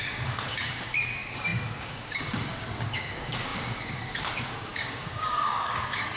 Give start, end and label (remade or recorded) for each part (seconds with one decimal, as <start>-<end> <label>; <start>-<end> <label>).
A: 0.0-6.2 remade